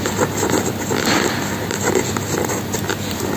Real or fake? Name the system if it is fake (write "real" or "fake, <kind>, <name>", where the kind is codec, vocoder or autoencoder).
real